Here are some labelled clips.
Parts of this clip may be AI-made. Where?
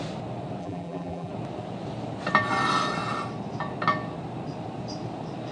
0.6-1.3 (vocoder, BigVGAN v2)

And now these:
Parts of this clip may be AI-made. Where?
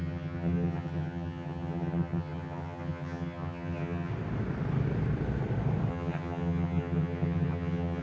0.0-4.1 (vocoder, HiFi-GAN); 5.9-8.0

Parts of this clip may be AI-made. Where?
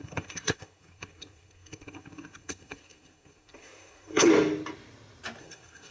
0.0-4.3 (codec, SNAC); 5.4-5.9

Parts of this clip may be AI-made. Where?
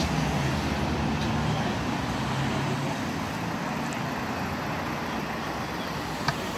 none